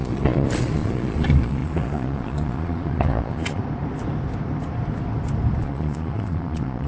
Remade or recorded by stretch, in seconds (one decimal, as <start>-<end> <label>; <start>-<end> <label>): 0.0-3.6 remade; 3.6-5.6 recorded; 5.6-6.9 remade